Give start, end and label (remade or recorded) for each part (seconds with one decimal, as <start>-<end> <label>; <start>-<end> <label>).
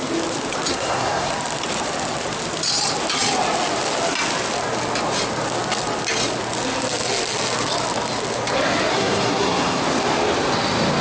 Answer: 0.0-0.7 recorded; 0.7-1.3 remade; 1.3-8.9 recorded; 8.9-9.8 remade; 9.8-11.0 recorded